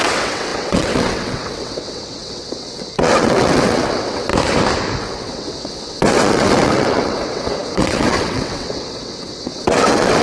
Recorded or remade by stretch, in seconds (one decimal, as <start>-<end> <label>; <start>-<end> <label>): 0.0-4.3 remade; 4.3-5.0 recorded; 5.0-10.2 remade